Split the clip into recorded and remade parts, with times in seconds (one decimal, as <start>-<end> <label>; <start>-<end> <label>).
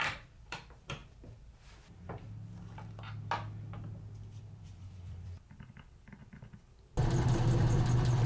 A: 0.0-1.0 remade; 1.0-4.4 recorded; 4.4-6.2 remade; 6.2-7.2 recorded; 7.2-8.3 remade